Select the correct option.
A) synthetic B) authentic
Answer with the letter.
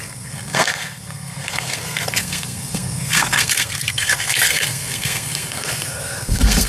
A